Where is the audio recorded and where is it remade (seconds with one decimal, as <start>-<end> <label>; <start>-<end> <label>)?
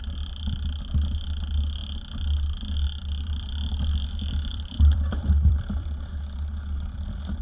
0.0-4.5 recorded; 4.5-6.1 remade; 6.1-7.4 recorded